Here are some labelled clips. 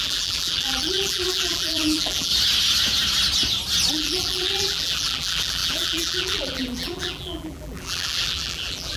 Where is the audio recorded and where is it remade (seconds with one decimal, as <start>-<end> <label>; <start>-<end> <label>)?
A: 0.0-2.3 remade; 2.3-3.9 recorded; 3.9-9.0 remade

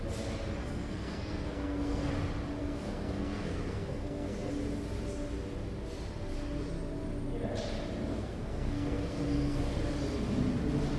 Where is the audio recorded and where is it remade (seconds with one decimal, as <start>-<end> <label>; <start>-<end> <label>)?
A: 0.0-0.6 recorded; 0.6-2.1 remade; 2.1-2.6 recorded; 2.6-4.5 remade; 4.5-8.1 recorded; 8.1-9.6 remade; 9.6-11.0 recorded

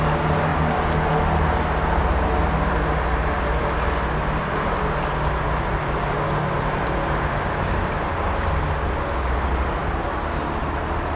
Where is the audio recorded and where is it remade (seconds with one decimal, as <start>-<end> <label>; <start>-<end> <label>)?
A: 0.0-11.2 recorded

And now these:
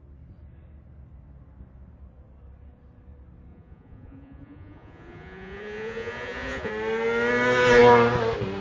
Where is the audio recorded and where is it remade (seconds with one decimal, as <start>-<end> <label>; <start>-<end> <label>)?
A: 0.0-3.5 recorded; 3.5-6.7 remade; 6.7-8.6 recorded